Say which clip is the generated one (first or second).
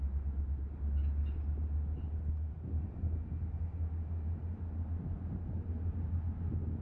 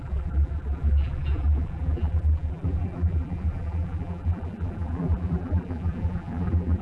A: second